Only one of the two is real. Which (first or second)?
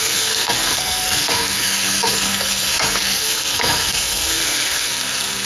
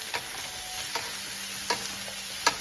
second